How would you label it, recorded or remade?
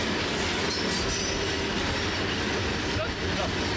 recorded